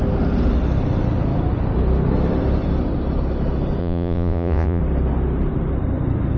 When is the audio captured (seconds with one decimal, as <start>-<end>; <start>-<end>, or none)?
0.0-3.8; 4.8-6.4